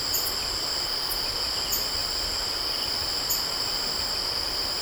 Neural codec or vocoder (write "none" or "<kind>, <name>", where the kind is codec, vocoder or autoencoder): none